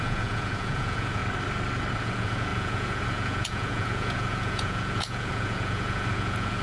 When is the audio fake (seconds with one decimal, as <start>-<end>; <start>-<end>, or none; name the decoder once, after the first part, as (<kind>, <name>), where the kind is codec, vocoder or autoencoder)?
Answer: 0.0-1.2 (vocoder, Vocos); 2.0-6.6